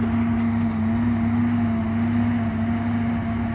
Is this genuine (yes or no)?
yes